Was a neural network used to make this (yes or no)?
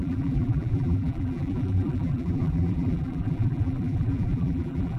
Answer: yes